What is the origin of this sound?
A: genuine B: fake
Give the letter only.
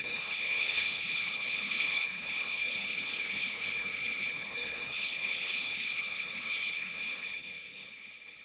B